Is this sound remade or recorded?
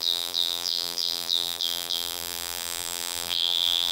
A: remade